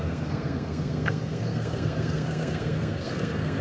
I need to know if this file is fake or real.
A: fake